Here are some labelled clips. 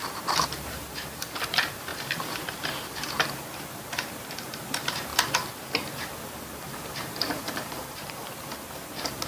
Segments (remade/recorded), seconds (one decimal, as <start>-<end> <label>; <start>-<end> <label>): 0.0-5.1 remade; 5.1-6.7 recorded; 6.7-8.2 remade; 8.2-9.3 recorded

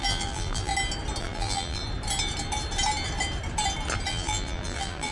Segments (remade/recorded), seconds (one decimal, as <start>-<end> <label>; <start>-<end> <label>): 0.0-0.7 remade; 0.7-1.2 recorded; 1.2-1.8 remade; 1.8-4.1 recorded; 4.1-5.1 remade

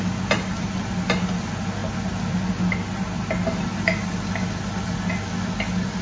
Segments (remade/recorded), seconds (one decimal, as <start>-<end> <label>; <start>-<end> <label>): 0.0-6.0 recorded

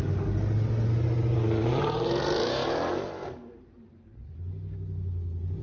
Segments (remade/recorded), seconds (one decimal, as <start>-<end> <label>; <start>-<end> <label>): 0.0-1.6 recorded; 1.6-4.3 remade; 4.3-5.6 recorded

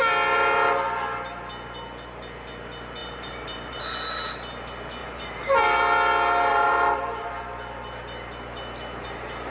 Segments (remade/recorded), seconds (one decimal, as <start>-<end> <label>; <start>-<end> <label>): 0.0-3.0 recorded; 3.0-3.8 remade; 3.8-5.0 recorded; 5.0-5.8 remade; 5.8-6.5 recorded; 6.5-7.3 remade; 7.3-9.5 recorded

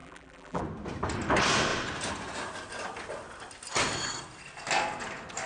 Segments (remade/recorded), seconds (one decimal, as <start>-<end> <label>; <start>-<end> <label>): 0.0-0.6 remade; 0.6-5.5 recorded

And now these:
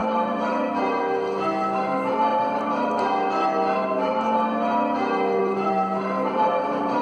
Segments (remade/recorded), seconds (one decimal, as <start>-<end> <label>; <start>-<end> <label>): 0.0-1.0 remade; 1.0-2.3 recorded; 2.3-2.9 remade; 2.9-5.4 recorded; 5.4-7.0 remade